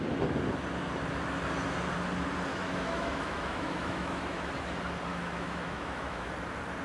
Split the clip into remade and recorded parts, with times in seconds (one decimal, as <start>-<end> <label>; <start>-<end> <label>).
0.0-2.5 recorded; 2.5-4.5 remade; 4.5-5.1 recorded; 5.1-6.3 remade; 6.3-6.8 recorded